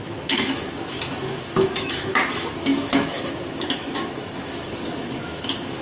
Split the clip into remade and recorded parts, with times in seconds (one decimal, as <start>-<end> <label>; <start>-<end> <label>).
0.0-5.8 remade